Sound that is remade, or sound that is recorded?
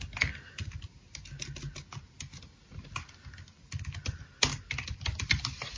recorded